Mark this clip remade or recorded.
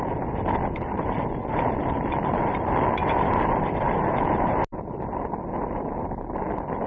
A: recorded